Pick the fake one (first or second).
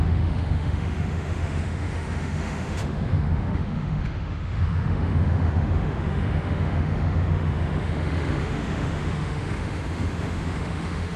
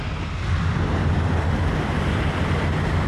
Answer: first